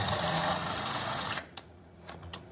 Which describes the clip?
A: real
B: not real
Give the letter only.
B